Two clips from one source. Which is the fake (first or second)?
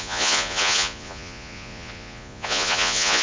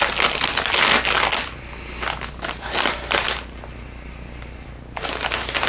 first